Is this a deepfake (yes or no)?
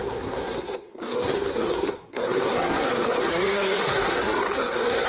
yes